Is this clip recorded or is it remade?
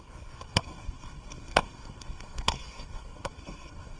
remade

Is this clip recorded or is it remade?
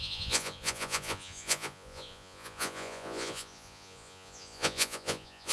remade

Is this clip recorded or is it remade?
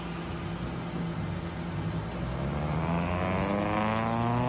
recorded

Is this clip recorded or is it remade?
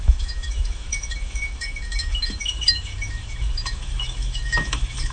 remade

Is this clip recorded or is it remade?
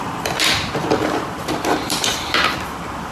remade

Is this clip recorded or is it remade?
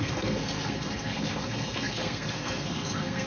remade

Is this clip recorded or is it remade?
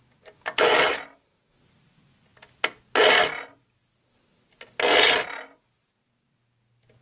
recorded